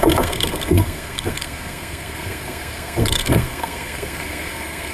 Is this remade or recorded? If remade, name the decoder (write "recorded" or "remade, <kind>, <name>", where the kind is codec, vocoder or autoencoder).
remade, codec, SNAC